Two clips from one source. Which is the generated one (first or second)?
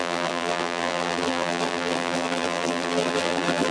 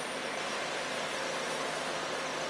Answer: first